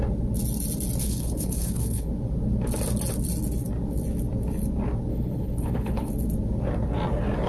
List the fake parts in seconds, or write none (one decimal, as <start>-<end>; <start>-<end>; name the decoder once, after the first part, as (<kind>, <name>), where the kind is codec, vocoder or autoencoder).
1.0-2.1 (codec, HILCodec); 5.1-6.1